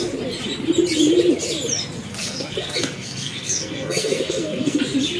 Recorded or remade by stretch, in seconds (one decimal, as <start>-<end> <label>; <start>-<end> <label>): 0.0-2.1 recorded; 2.1-4.8 remade; 4.8-5.2 recorded